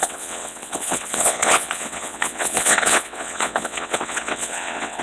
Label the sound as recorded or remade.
remade